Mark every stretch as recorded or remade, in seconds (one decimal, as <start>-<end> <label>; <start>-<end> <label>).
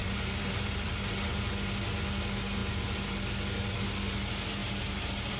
0.0-0.9 remade; 0.9-4.6 recorded; 4.6-5.4 remade